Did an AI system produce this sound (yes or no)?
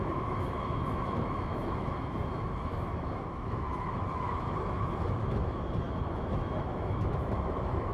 yes